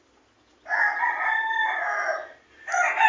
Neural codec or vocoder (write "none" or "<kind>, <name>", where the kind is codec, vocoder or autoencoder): none